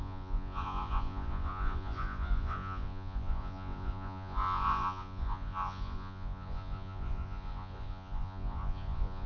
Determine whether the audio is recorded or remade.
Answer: remade